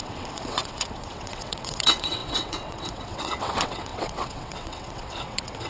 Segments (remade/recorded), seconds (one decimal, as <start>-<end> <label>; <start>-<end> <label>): 0.0-5.7 remade